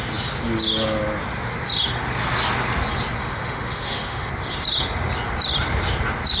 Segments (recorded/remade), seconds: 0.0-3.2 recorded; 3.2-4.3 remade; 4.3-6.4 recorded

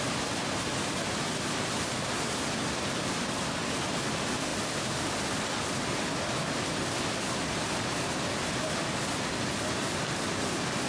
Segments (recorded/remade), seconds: 0.0-10.9 recorded

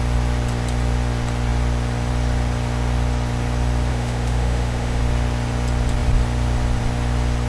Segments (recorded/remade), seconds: 0.0-3.9 recorded; 3.9-5.0 remade; 5.0-7.5 recorded